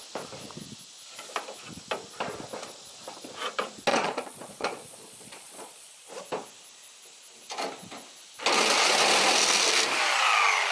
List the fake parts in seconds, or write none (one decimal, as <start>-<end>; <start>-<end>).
3.9-6.1